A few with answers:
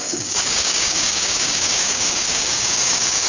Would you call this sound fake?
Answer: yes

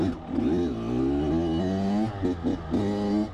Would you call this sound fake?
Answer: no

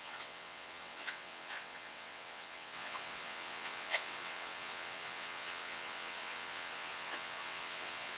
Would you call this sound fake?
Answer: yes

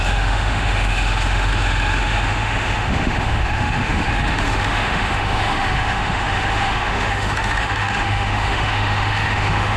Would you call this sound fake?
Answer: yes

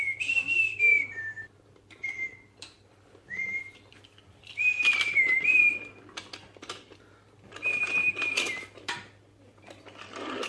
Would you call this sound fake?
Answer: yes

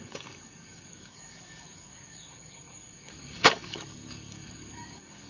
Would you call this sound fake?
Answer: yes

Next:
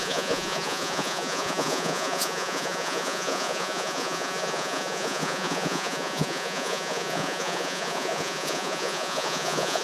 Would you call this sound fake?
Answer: yes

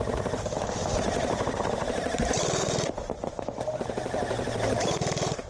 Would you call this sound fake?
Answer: yes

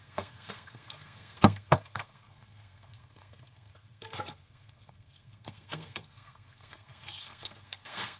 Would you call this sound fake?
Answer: yes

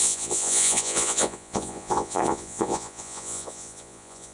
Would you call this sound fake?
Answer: yes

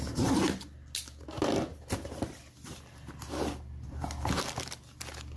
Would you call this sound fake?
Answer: no